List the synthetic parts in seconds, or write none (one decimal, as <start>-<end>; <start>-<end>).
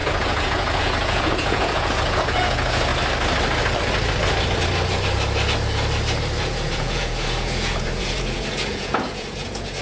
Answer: 0.0-2.9; 6.4-9.8